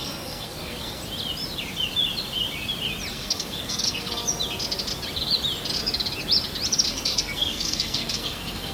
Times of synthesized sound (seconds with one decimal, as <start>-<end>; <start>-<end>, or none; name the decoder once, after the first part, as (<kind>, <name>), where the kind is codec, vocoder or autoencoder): 0.0-1.0 (codec, SNAC); 3.1-4.2; 6.9-8.7